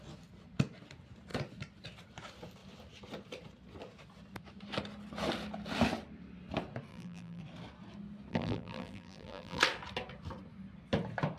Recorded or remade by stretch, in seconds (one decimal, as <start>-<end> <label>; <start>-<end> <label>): 0.0-6.9 recorded; 6.9-7.4 remade; 7.4-8.3 recorded; 8.3-9.6 remade; 9.6-11.4 recorded